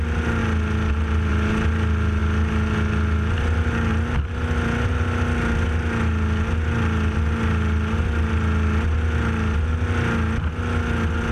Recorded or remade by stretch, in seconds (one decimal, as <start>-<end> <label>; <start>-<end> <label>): 0.0-11.3 recorded